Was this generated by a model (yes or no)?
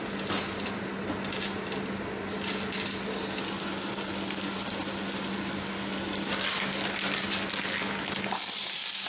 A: no